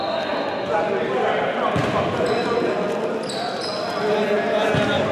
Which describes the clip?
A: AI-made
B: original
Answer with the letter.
B